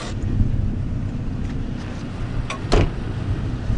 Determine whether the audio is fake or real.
real